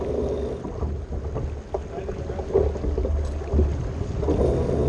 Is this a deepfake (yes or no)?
no